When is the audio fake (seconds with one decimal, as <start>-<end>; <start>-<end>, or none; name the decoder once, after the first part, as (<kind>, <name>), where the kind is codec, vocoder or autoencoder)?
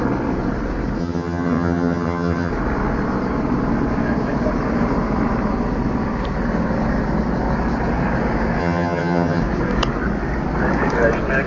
1.0-2.5 (vocoder, HiFi-GAN); 8.6-9.4